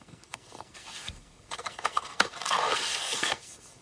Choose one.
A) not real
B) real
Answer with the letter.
A